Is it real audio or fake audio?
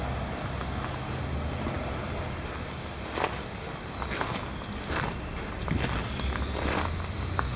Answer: real